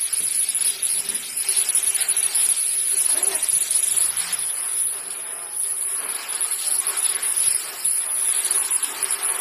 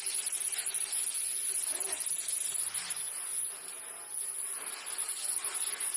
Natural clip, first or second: second